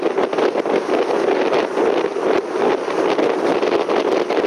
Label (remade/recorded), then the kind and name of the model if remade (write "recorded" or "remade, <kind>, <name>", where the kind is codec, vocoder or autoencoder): recorded